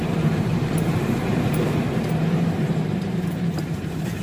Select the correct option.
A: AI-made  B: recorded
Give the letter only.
A